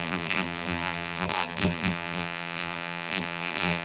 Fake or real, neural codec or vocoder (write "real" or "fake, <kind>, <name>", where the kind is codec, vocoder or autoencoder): fake, vocoder, BigVGAN v2